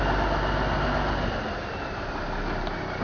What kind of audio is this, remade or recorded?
recorded